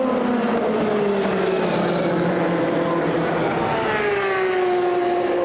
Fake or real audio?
real